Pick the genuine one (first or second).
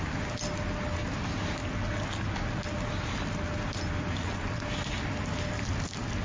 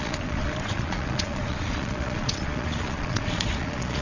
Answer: first